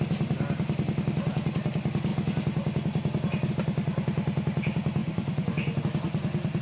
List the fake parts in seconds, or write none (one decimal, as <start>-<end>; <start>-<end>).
5.0-5.8